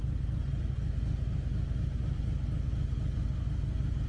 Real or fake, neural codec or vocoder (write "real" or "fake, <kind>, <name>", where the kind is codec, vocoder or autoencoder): real